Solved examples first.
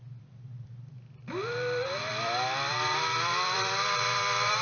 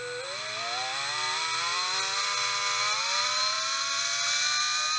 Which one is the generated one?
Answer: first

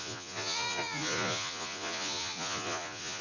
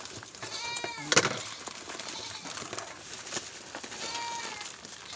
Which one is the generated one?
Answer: first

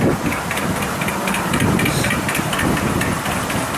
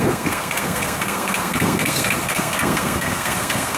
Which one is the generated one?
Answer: second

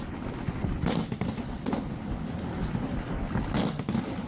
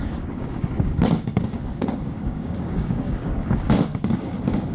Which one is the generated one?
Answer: second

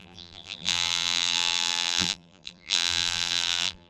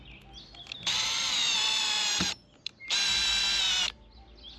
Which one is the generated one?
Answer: first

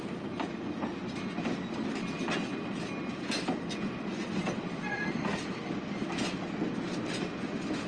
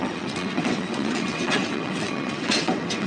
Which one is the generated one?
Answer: second